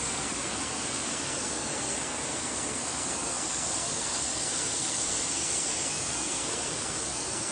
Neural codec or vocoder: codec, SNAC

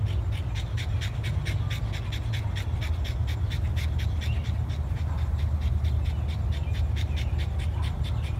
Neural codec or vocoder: none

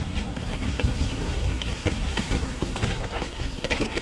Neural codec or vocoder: codec, SNAC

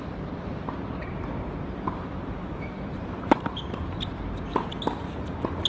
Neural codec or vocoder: none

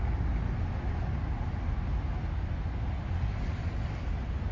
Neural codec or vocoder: none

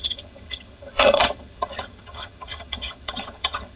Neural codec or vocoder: vocoder, HiFi-GAN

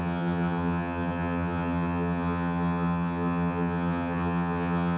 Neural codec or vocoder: vocoder, HiFi-GAN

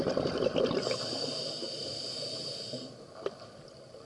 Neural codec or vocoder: none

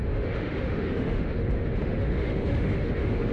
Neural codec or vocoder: autoencoder, DAC-VAE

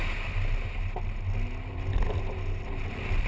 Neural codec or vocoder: none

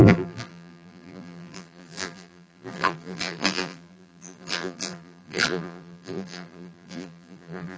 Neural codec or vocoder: vocoder, BigVGAN v2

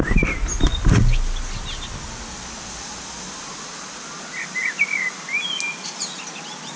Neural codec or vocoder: none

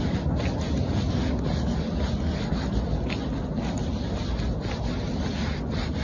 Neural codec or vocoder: none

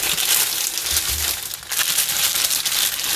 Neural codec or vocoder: none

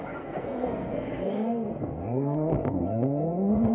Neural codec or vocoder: codec, SNAC